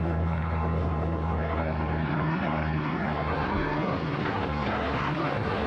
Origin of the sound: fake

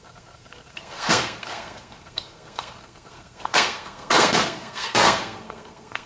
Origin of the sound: fake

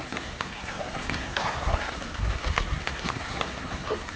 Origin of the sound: fake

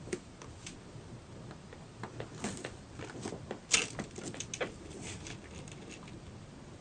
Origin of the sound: real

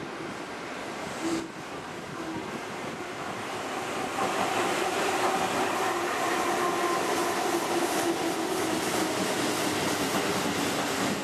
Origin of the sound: real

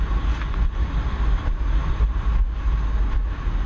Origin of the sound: real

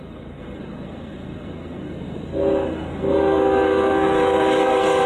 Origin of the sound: fake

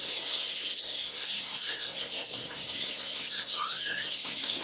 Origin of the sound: fake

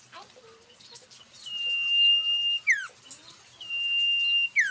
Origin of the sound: real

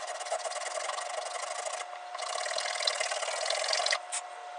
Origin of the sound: real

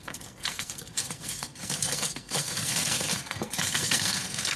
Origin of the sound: fake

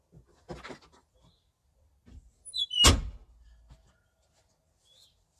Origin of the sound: real